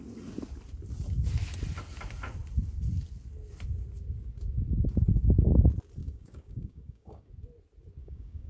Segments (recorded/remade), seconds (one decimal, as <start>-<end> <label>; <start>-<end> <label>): 0.0-6.0 recorded; 6.0-7.3 remade; 7.3-8.0 recorded; 8.0-8.5 remade

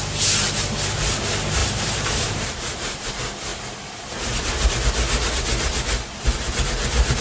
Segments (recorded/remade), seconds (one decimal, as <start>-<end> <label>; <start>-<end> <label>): 0.0-1.6 recorded; 1.6-3.1 remade; 3.1-7.2 recorded

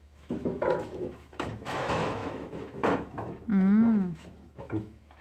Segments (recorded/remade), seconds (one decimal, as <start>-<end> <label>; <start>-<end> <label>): 0.0-5.2 remade

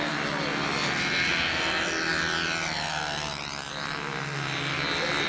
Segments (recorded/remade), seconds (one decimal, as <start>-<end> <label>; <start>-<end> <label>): 0.0-5.3 recorded